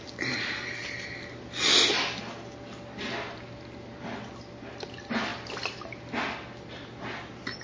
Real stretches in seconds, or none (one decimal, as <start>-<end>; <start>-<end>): 0.0-7.6